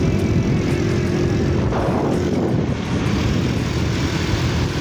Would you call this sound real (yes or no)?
no